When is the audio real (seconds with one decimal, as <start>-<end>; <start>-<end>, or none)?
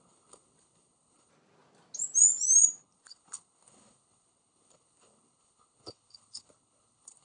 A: 1.3-2.8